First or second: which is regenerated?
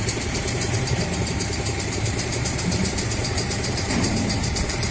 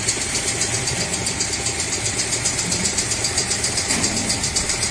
first